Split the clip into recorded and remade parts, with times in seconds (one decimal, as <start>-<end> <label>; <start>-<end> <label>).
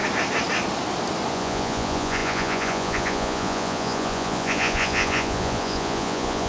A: 0.0-1.3 recorded; 1.3-6.5 remade